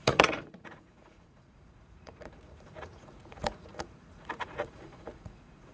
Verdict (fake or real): fake